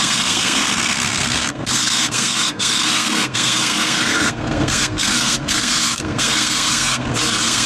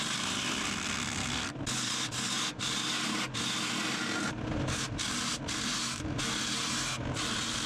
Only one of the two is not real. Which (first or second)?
first